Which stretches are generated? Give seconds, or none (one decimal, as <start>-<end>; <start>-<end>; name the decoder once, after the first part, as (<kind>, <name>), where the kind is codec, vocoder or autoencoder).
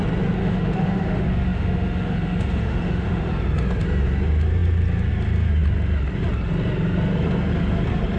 0.4-3.3 (autoencoder, DAC-VAE)